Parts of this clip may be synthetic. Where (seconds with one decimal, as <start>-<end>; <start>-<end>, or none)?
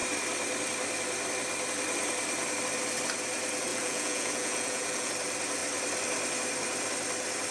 3.7-5.1